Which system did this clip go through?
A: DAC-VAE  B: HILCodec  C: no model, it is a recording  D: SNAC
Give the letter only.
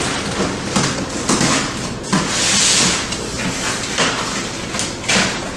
C